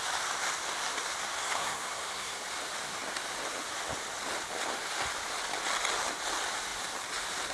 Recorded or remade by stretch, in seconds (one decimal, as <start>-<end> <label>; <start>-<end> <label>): 0.0-1.4 recorded; 1.4-2.4 remade; 2.4-7.5 recorded